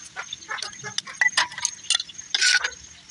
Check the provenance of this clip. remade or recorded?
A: recorded